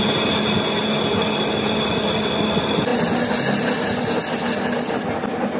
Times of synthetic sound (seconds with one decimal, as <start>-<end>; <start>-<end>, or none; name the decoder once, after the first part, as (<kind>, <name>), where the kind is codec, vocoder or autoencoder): none